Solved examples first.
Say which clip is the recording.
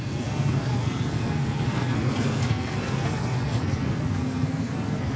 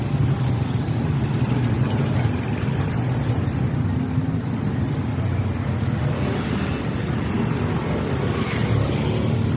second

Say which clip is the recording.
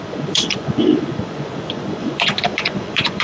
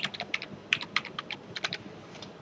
second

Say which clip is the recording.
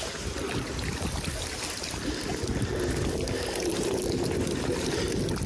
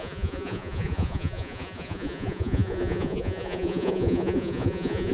first